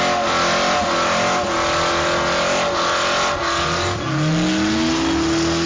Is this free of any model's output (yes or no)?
yes